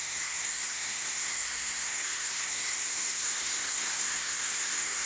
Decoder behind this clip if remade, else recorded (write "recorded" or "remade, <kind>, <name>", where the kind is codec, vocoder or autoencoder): remade, codec, SNAC